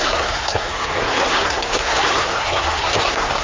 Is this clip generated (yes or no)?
yes